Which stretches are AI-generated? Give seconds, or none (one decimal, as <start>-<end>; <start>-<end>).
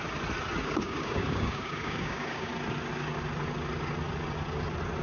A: 0.6-2.5